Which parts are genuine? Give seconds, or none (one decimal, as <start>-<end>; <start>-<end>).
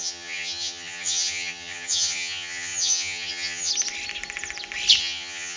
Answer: 3.7-5.0